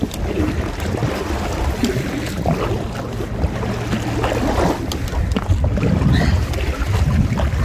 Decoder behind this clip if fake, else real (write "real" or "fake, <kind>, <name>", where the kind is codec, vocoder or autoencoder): real